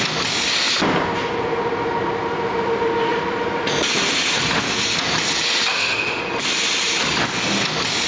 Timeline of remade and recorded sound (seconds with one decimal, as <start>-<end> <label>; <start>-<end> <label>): 0.0-5.7 recorded; 5.7-6.2 remade; 6.2-8.1 recorded